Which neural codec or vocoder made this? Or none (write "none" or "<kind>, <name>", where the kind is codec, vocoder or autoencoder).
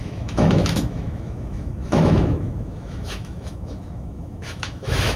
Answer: autoencoder, DAC-VAE